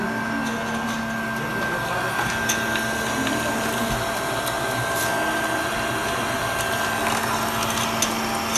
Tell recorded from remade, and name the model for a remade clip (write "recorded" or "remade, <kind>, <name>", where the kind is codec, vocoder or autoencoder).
recorded